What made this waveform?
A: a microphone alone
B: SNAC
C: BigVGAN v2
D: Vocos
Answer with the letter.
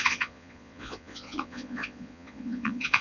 D